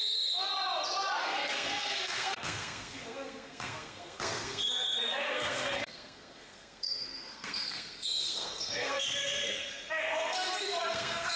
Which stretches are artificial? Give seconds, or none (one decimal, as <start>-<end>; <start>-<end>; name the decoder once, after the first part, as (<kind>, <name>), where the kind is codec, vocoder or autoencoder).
0.0-0.5 (codec, SNAC); 1.2-11.4